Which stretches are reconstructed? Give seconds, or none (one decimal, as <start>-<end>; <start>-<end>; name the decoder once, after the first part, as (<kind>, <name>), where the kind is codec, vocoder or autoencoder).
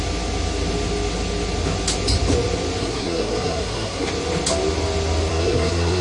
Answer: 2.8-4.1 (codec, SNAC); 5.3-6.0